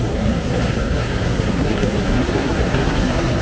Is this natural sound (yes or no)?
no